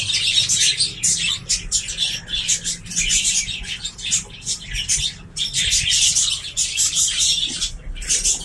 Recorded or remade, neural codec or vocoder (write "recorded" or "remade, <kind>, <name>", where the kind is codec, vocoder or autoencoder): recorded